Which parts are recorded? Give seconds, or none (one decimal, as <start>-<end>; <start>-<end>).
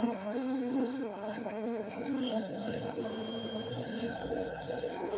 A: 3.0-3.7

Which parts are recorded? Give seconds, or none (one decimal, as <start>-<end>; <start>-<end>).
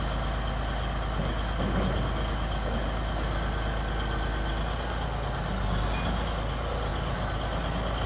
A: 0.0-8.1